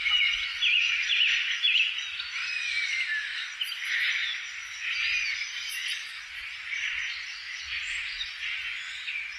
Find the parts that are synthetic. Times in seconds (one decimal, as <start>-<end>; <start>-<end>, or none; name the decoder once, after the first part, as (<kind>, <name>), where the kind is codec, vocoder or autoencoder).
0.5-1.9 (vocoder, BigVGAN v2)